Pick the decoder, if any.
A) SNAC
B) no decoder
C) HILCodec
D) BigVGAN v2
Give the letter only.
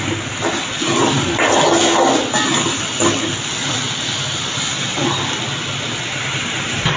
B